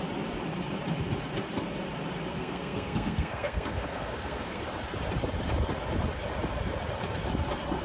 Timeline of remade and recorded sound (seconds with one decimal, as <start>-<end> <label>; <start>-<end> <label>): 0.0-2.3 recorded; 2.3-4.6 remade; 4.6-7.8 recorded